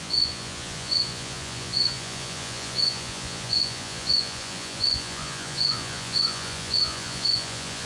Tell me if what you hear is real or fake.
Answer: fake